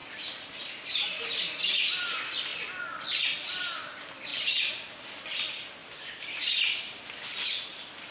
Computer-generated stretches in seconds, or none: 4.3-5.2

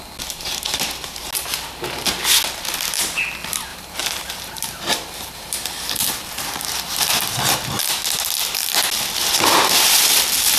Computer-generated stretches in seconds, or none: 3.7-7.4

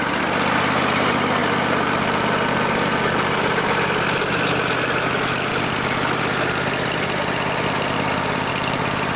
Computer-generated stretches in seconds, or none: none